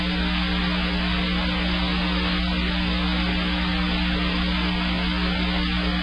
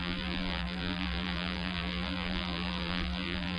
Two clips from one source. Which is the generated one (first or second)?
second